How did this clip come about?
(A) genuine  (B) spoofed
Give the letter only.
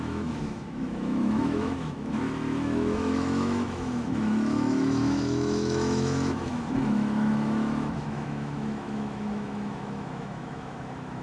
B